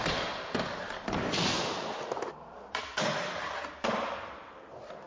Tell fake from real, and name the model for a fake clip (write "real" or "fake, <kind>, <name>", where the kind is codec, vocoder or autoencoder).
real